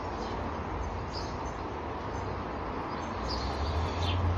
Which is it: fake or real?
real